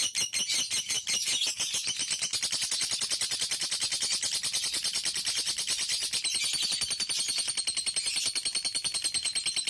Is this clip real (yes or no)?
yes